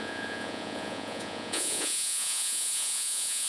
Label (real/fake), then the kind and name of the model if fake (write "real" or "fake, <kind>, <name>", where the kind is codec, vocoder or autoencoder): fake, vocoder, Vocos